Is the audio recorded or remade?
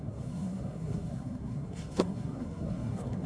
remade